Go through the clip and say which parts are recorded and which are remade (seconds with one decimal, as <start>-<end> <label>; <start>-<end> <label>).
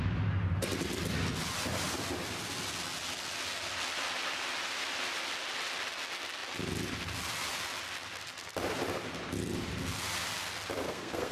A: 0.0-10.8 recorded; 10.8-11.3 remade